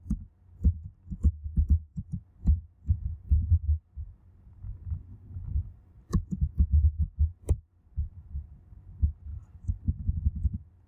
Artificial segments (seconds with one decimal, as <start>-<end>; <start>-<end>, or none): 1.9-6.1; 7.3-8.3; 9.3-10.9